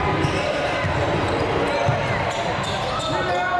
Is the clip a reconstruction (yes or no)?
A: no